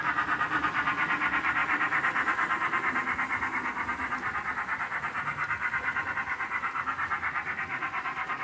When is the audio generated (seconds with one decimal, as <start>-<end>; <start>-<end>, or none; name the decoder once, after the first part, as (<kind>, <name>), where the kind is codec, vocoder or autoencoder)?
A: none